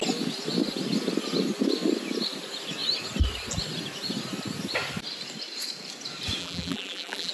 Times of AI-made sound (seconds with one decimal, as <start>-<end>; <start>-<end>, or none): 6.4-7.3